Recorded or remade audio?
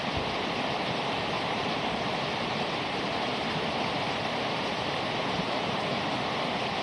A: remade